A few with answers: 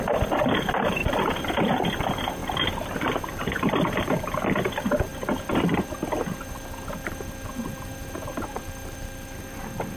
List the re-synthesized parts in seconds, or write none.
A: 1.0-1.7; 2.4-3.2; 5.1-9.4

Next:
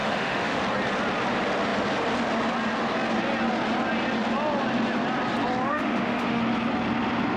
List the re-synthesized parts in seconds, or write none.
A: 0.0-0.6; 5.7-6.4

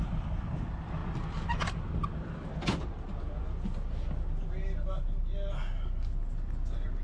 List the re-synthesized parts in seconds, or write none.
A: none

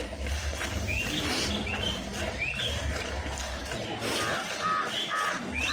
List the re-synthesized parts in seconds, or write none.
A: none

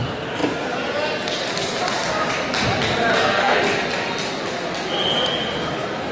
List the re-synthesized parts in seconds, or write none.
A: 3.1-3.6

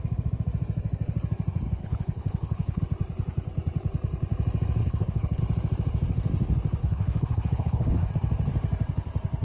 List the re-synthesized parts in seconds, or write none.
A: 1.8-2.8; 4.8-5.4; 6.8-8.1

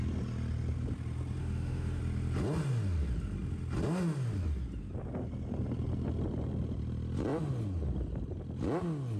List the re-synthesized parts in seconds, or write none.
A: 1.4-2.0